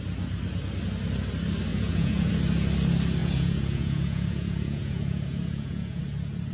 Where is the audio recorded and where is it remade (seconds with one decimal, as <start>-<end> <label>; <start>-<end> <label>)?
0.0-1.7 recorded; 1.7-2.3 remade; 2.3-3.2 recorded; 3.2-6.0 remade; 6.0-6.5 recorded